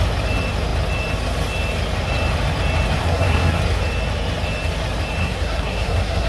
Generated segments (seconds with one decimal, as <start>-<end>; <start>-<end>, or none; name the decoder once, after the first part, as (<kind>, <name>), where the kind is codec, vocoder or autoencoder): 3.0-3.6 (codec, SNAC); 5.2-6.3